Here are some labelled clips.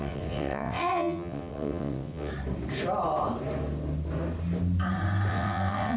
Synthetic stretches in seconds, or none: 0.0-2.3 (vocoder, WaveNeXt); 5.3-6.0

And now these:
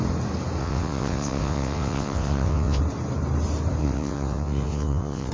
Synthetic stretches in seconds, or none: 0.6-2.8 (vocoder, WaveNeXt); 3.8-5.3

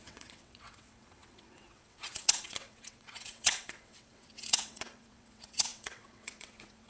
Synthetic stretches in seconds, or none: 0.0-6.9 (vocoder, WaveNeXt)

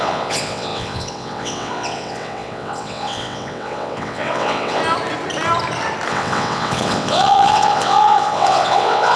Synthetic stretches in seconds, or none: 0.0-4.8 (vocoder, WaveNeXt); 6.1-9.2